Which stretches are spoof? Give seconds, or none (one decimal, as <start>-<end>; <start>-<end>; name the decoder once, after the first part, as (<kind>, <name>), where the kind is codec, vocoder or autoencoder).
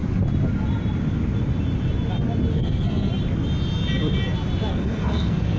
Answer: 2.5-3.1 (codec, SNAC); 4.7-5.6